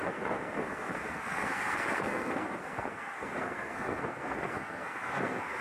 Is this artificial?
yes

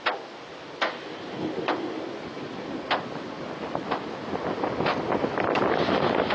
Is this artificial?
no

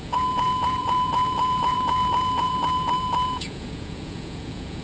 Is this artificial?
yes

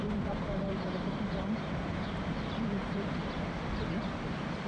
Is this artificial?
yes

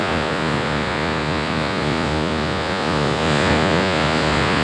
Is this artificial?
yes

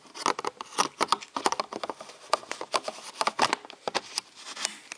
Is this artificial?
no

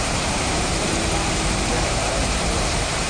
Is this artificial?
yes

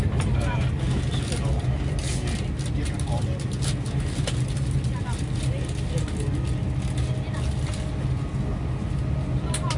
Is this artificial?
no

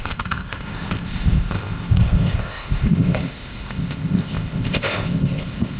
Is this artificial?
yes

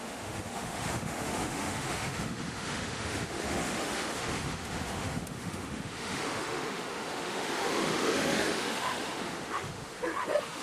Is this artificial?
yes